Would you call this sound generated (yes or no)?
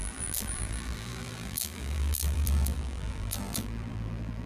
yes